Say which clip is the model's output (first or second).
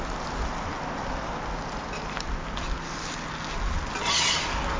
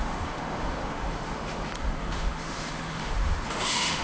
second